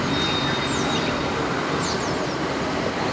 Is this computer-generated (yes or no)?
no